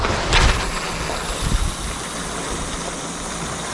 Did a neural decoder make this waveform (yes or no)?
no